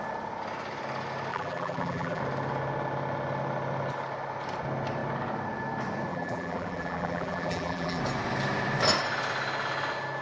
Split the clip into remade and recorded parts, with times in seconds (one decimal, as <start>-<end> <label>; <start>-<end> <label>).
0.0-1.3 recorded; 1.3-2.2 remade; 2.2-6.1 recorded; 6.1-8.0 remade; 8.0-10.2 recorded